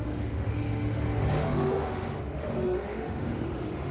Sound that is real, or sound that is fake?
fake